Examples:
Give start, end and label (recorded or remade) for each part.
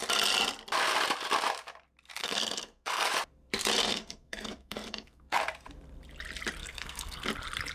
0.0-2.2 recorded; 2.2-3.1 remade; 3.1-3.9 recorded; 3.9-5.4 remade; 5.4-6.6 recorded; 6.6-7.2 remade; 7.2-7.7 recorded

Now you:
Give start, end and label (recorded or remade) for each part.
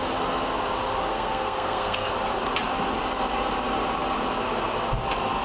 0.0-1.1 recorded; 1.1-2.1 remade; 2.1-5.4 recorded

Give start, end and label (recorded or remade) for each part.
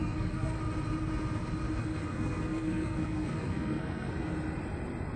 0.0-0.6 remade; 0.6-1.8 recorded; 1.8-4.1 remade; 4.1-5.2 recorded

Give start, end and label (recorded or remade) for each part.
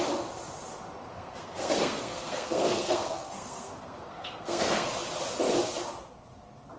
0.0-1.1 recorded; 1.1-4.9 remade; 4.9-6.8 recorded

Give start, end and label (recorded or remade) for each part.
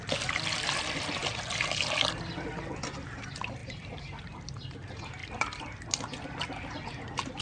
0.0-7.4 recorded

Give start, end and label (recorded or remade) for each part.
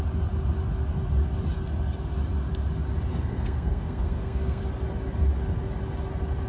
0.0-3.1 recorded; 3.1-4.6 remade; 4.6-6.5 recorded